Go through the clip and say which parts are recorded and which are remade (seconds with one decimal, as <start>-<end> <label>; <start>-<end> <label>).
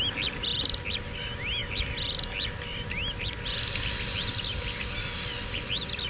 0.0-6.1 recorded